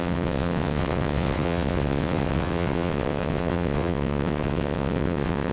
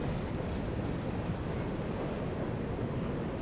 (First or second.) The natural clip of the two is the second